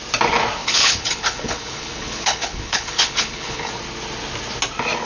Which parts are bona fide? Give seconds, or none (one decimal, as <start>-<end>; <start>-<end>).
0.0-0.6; 3.7-5.1

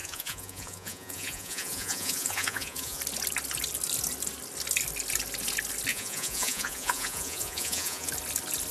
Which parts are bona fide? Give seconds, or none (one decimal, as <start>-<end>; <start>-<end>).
3.0-5.9; 8.1-8.7

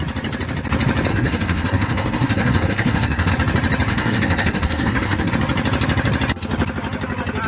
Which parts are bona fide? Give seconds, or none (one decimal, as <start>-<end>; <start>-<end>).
0.0-1.1; 3.3-3.9; 5.3-7.5

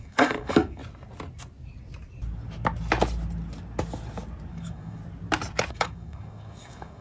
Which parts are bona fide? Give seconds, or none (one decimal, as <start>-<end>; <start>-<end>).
0.8-4.5; 5.0-5.7

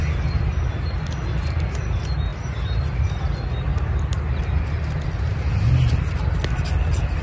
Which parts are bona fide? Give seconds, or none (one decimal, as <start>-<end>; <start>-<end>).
0.0-7.2